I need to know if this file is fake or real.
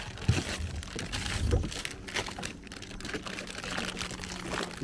real